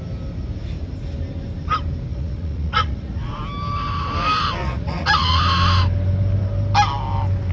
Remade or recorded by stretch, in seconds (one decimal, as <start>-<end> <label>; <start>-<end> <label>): 0.0-2.1 recorded; 2.1-3.4 remade; 3.4-4.6 recorded; 4.6-5.4 remade; 5.4-7.5 recorded